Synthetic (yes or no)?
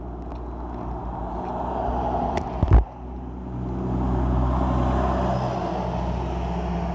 no